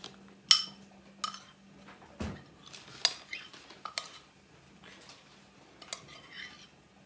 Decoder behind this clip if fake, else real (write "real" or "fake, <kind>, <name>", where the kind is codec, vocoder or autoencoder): real